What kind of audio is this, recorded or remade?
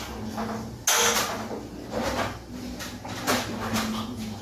recorded